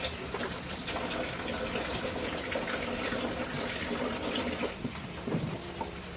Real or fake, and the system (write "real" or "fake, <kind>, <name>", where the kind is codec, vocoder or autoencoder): real